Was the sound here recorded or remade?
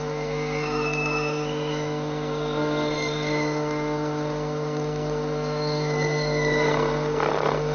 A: remade